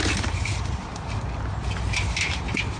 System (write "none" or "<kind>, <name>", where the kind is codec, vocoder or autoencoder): none